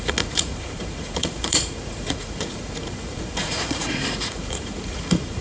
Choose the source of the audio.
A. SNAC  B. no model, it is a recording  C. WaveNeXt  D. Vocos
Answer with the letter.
D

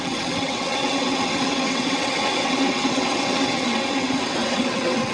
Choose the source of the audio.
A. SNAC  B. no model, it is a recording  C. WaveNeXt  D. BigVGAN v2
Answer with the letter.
C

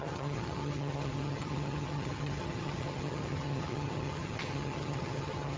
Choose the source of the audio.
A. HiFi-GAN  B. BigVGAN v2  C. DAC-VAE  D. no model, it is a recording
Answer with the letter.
A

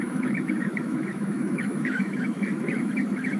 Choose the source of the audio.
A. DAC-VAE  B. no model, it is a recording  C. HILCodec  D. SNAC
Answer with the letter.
A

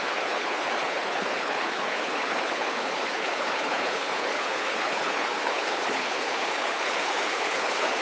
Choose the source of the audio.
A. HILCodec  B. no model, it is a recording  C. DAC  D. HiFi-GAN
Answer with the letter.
A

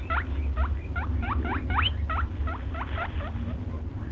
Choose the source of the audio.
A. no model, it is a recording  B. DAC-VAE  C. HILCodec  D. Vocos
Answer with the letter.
A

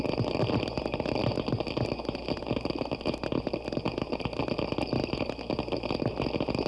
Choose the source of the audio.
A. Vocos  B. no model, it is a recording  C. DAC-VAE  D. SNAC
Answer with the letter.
B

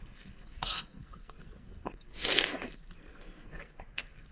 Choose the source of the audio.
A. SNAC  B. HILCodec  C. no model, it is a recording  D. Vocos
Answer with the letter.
A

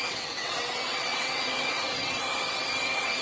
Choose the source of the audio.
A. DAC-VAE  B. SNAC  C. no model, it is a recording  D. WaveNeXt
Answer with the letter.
D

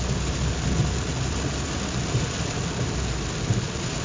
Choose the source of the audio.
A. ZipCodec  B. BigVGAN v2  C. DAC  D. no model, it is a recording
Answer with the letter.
D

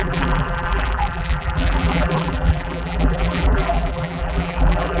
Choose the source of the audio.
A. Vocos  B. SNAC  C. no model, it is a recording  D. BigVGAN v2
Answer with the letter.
D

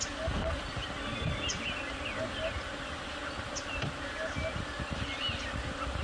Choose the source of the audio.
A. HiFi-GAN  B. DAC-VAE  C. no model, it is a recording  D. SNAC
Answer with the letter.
C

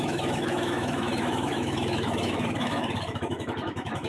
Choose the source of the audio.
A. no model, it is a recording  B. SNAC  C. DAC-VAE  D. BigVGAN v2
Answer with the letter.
C